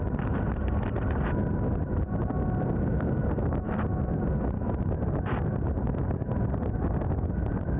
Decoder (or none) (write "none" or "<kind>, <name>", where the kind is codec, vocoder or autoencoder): none